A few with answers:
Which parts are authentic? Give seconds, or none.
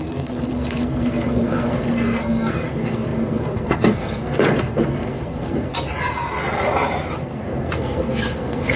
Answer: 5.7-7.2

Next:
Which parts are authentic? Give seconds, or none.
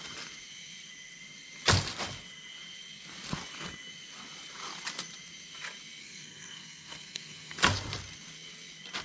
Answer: 0.0-6.0; 7.6-9.0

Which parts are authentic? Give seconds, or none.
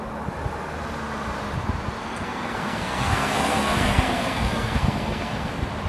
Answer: 0.0-2.0; 5.5-5.9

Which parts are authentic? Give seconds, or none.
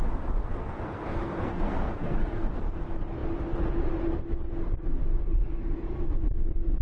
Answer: 0.0-0.4; 2.7-6.8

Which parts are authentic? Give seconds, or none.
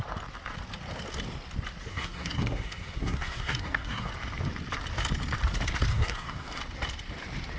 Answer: 0.0-1.9; 4.1-5.9; 6.6-7.6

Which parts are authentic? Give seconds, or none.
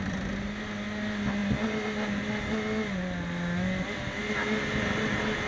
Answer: 0.0-5.5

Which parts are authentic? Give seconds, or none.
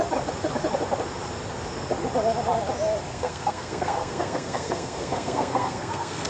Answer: 0.0-3.1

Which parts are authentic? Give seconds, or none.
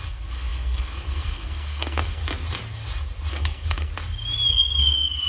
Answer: 2.2-3.3; 3.9-4.5